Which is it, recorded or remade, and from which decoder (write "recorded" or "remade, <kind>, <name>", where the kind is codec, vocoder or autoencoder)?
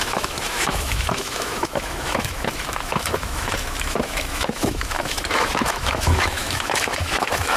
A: remade, autoencoder, DAC-VAE